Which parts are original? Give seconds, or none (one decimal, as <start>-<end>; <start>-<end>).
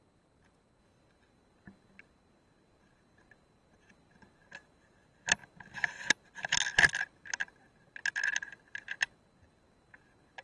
0.0-10.4